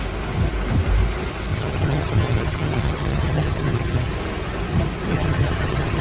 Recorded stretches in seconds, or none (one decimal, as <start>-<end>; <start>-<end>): 0.0-1.5; 4.1-5.1